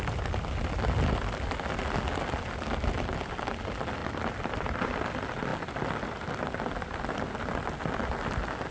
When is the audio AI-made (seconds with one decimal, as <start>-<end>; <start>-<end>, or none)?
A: 4.0-5.1